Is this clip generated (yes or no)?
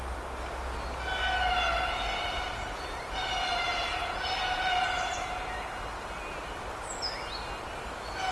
no